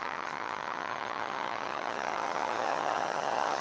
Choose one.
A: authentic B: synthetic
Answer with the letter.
B